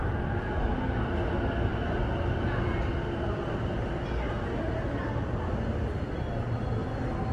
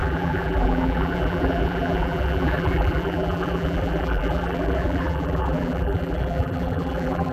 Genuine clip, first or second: first